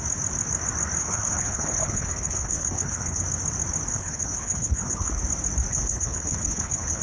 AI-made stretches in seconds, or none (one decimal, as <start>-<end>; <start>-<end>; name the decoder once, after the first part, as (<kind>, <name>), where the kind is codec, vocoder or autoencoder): 1.0-3.2 (codec, HILCodec); 3.9-5.2; 5.7-7.0